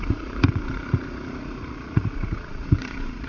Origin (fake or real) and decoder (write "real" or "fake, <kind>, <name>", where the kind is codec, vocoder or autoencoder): fake, vocoder, Vocos